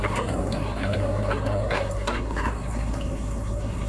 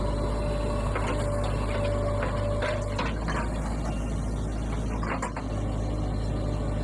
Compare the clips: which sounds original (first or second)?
second